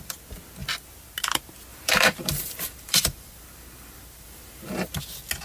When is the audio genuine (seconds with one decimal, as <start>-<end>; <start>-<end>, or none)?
0.0-1.7; 4.9-5.4